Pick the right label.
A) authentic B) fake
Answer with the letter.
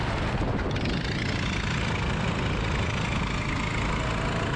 A